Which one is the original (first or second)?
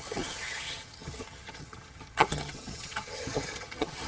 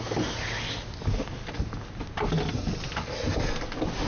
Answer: second